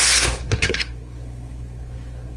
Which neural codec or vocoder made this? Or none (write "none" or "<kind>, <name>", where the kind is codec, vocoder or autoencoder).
codec, SNAC